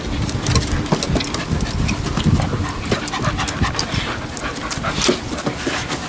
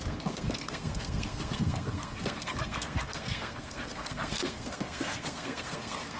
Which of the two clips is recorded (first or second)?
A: first